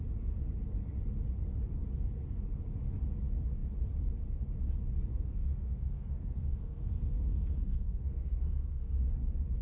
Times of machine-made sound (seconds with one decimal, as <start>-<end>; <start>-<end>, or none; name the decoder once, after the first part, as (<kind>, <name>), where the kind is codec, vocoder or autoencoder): 5.1-9.0 (codec, SNAC)